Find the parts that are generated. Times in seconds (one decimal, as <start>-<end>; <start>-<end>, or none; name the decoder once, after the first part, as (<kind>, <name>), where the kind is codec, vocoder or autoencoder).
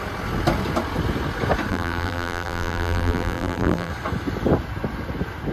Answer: 1.7-3.9 (vocoder, BigVGAN v2)